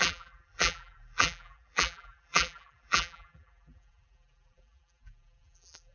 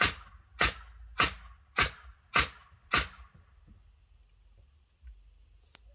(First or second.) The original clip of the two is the second